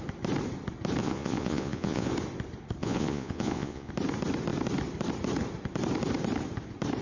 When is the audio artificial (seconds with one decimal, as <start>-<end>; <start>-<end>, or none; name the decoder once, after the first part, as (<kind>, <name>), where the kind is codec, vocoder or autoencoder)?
1.0-2.1 (vocoder, Vocos); 2.8-3.9